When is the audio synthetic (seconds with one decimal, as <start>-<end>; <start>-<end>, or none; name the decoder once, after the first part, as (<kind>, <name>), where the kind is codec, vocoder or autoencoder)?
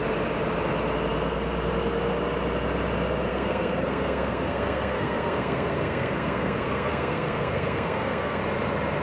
3.3-8.4 (codec, SNAC)